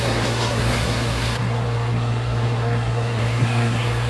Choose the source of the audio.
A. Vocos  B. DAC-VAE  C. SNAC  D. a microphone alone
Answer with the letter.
C